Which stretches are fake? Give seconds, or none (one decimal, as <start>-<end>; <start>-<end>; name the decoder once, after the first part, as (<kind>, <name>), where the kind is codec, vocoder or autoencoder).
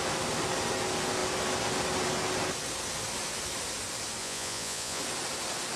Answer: 4.2-5.0 (vocoder, Vocos)